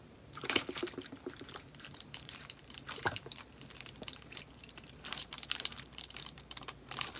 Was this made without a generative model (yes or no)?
no